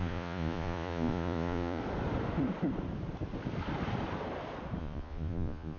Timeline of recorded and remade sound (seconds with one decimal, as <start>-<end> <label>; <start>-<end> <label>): 0.0-1.8 remade; 1.8-4.8 recorded; 4.8-5.8 remade

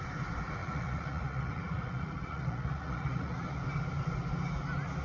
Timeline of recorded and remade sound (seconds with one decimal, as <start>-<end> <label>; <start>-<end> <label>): 0.0-0.6 recorded; 0.6-3.6 remade; 3.6-5.0 recorded

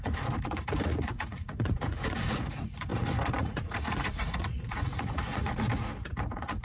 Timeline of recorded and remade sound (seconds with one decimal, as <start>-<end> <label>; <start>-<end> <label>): 0.0-6.6 remade

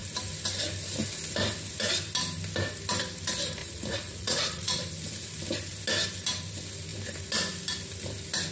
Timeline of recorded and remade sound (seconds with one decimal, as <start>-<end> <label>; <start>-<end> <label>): 0.0-3.6 recorded; 3.6-4.9 remade; 4.9-8.5 recorded

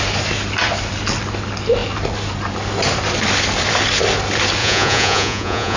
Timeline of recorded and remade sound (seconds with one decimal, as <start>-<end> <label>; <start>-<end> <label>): 0.0-4.6 recorded; 4.6-5.8 remade

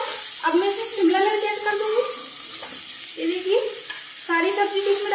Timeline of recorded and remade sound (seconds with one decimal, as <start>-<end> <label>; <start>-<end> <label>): 0.0-0.9 recorded; 0.9-1.5 remade; 1.5-5.1 recorded

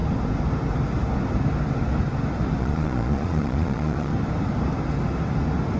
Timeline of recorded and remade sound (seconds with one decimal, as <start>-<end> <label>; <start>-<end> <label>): 0.0-2.6 recorded; 2.6-4.1 remade; 4.1-5.8 recorded

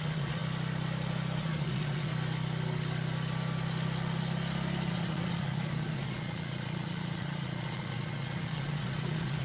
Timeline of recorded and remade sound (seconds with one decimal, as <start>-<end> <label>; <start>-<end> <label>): 0.0-0.4 remade; 0.4-1.4 recorded; 1.4-2.1 remade; 2.1-4.9 recorded; 4.9-9.4 remade